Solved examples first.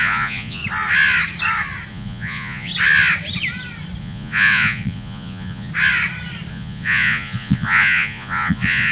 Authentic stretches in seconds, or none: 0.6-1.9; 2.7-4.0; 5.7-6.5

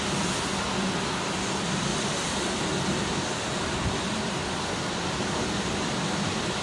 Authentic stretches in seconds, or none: 0.0-6.6

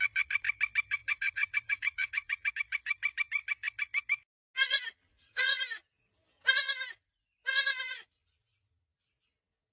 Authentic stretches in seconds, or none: 0.0-1.0; 2.5-5.1; 5.6-9.7

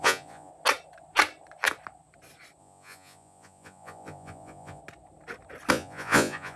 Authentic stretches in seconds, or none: 0.5-2.6; 4.8-5.7

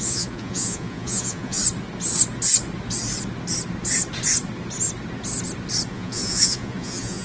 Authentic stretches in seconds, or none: 1.6-5.9

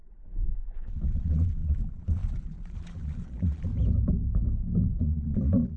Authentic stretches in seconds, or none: 3.7-5.0

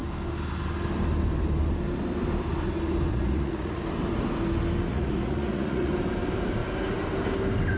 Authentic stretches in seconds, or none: 0.0-3.1; 3.8-4.9; 5.9-7.8